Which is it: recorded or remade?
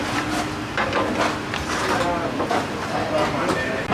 recorded